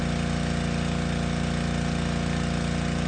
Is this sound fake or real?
real